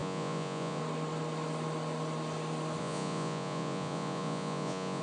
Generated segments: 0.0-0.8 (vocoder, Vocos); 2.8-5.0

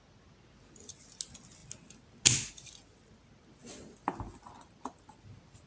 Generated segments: none

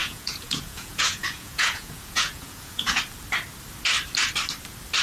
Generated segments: 0.0-3.0 (vocoder, Vocos)

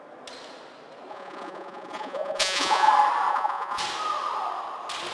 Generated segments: 1.1-2.9 (vocoder, Vocos); 3.3-3.8

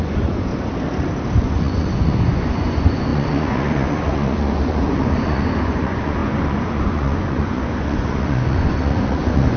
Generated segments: 0.0-0.5 (vocoder, Vocos); 1.4-9.6